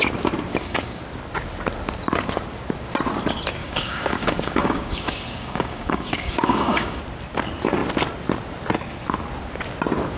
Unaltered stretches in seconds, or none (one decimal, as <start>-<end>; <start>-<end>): 0.0-0.5; 1.0-3.6; 7.0-10.2